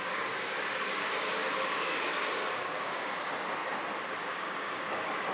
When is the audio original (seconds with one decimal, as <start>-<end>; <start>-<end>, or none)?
2.1-2.6; 3.6-4.3